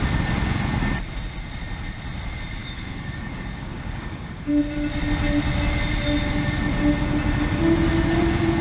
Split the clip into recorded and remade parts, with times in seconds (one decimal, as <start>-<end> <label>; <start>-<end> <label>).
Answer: 0.0-2.6 recorded; 2.6-4.5 remade; 4.5-8.6 recorded